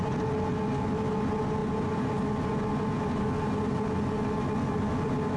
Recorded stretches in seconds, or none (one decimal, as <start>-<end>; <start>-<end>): 0.0-5.4